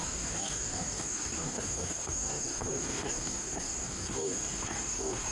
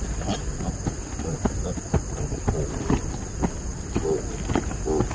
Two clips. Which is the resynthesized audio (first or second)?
first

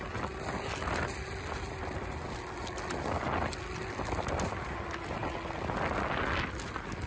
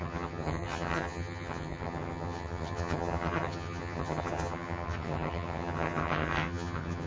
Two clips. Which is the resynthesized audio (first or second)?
second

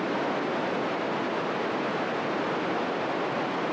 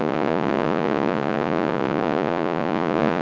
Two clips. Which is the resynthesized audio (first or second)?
second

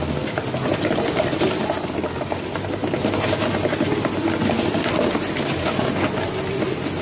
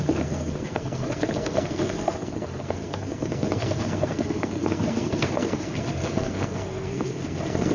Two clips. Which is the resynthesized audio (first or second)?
second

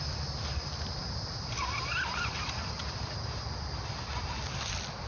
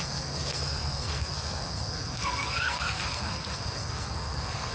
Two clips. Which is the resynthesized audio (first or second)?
second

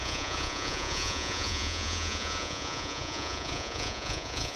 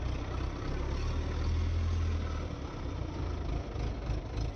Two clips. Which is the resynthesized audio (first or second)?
first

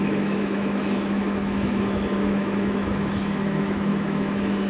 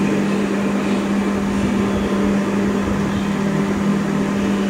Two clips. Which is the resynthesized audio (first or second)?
first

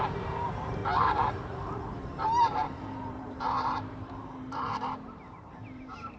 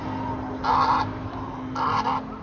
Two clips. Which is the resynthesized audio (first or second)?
first